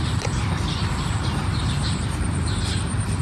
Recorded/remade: remade